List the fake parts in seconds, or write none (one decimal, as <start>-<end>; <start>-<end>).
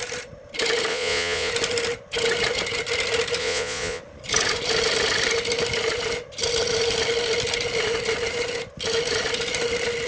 0.9-1.5; 3.4-4.0